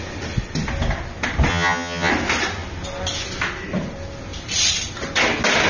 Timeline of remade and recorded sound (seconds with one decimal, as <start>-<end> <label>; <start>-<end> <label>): 0.0-1.5 recorded; 1.5-2.1 remade; 2.1-5.7 recorded